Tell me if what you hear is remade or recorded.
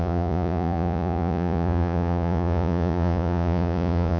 remade